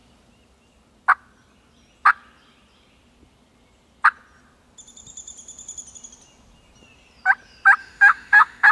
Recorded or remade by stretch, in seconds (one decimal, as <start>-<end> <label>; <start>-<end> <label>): 0.0-7.8 recorded; 7.8-8.7 remade